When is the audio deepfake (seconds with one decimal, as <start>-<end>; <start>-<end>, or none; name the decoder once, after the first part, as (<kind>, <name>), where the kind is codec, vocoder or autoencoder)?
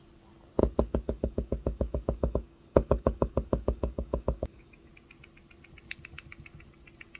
0.6-4.9 (codec, DAC)